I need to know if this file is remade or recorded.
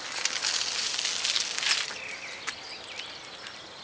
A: recorded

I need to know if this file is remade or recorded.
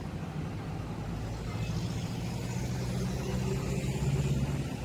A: recorded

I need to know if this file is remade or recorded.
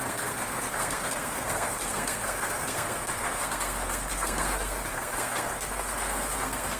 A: remade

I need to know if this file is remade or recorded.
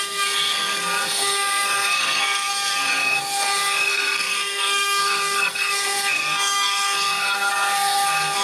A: remade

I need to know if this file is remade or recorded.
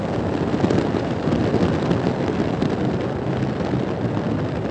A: recorded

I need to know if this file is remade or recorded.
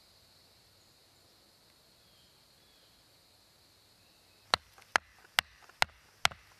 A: recorded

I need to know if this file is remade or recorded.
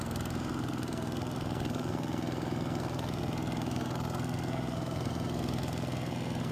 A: remade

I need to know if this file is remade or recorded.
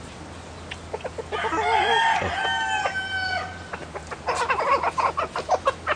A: recorded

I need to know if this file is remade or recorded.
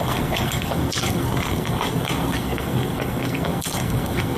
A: remade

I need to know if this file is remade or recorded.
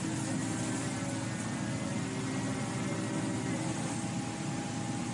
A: recorded